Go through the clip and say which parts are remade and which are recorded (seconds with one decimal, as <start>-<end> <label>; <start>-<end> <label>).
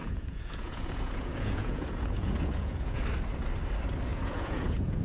0.0-3.0 remade; 3.0-4.1 recorded; 4.1-5.0 remade